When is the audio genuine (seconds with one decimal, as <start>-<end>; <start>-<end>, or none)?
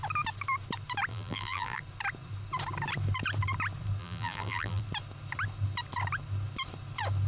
0.0-1.1; 1.8-4.0; 4.8-7.3